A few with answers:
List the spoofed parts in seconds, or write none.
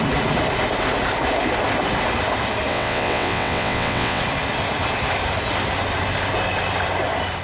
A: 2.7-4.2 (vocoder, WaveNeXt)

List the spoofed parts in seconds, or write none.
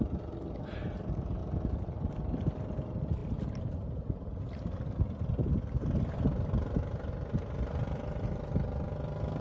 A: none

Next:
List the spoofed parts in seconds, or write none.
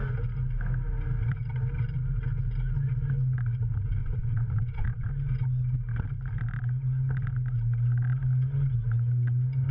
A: 4.0-5.1 (vocoder, WaveNeXt)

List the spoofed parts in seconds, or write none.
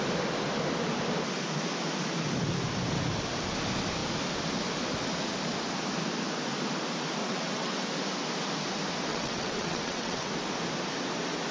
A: 7.2-7.9 (vocoder, WaveNeXt); 9.1-10.3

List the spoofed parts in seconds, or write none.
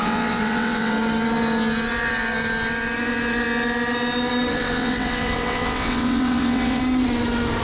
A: 0.0-0.9 (vocoder, WaveNeXt); 4.5-6.8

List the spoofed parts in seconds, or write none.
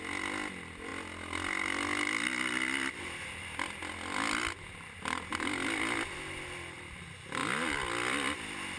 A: none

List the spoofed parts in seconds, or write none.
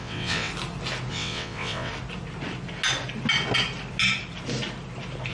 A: 0.0-0.5 (vocoder, WaveNeXt); 1.1-1.9